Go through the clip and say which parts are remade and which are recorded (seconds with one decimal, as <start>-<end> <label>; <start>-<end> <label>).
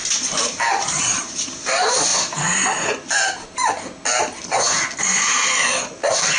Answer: 0.0-1.0 recorded; 1.0-2.1 remade; 2.1-5.0 recorded; 5.0-6.4 remade